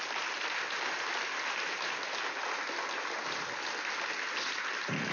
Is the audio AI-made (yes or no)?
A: no